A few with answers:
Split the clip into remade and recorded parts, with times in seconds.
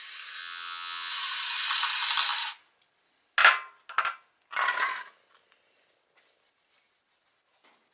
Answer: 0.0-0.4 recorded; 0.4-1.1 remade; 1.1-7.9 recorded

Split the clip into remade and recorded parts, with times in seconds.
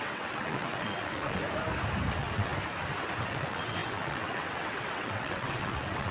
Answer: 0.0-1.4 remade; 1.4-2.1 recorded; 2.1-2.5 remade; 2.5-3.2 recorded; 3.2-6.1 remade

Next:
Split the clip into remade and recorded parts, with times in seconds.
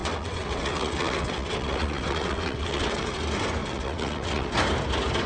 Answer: 0.0-3.2 remade; 3.2-3.6 recorded; 3.6-4.5 remade; 4.5-5.3 recorded